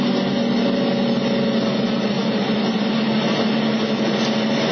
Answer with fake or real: real